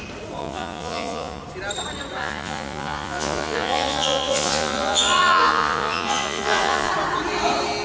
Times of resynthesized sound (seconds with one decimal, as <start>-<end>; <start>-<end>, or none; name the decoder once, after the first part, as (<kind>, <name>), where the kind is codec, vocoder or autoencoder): 0.4-1.4 (vocoder, Vocos); 2.2-6.9